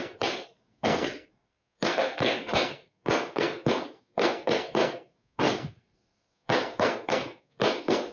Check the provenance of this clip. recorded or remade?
remade